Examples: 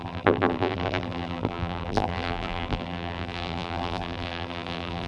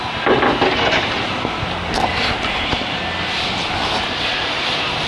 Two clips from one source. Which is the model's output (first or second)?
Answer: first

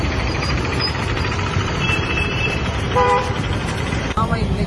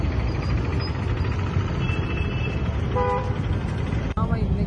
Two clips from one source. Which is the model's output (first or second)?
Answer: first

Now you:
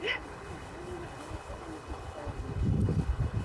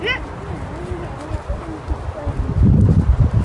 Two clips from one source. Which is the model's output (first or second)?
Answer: first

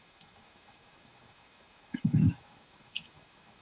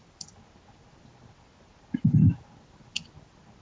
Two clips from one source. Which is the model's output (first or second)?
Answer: first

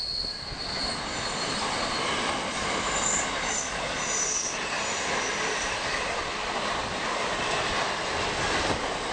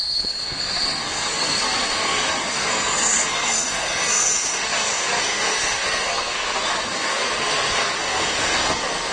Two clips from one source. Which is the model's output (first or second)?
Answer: second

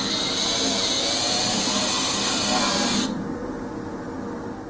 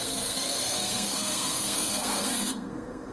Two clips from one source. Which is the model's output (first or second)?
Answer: second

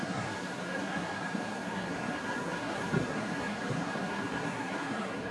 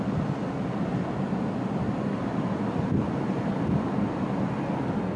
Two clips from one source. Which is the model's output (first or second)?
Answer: first